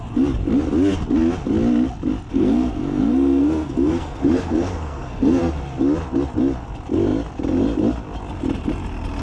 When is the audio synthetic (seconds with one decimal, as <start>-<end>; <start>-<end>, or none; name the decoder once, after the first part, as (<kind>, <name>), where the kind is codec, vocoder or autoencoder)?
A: 2.3-5.5 (codec, SNAC)